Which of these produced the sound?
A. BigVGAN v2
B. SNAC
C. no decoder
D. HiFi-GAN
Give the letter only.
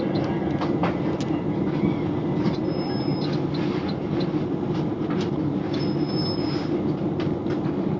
C